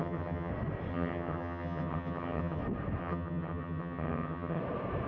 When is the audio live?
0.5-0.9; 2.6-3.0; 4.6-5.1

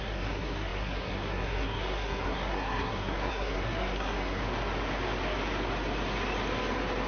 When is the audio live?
4.4-7.1

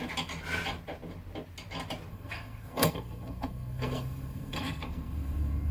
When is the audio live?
0.0-2.1

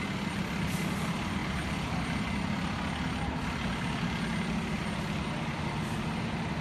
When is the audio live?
0.0-6.6